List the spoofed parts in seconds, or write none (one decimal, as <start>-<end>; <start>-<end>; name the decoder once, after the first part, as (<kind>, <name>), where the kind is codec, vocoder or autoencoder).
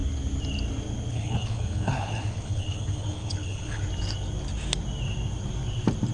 1.1-3.8 (codec, HILCodec)